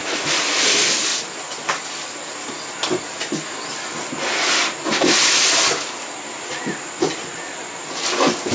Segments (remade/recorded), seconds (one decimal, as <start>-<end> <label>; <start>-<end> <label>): 0.0-8.5 recorded